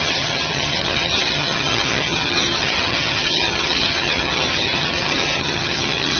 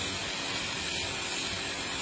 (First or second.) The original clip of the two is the second